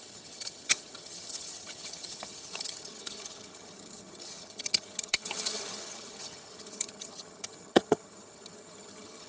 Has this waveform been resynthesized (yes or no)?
yes